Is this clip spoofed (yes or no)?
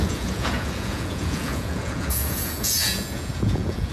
yes